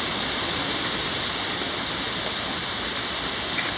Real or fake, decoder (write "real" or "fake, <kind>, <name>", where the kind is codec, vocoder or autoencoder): real